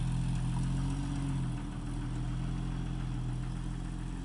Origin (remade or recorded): recorded